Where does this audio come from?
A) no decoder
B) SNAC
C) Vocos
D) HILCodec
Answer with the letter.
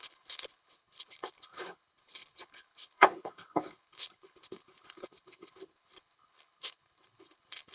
D